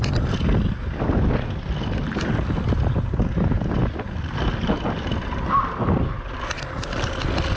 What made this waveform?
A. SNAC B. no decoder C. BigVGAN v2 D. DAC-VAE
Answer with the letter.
B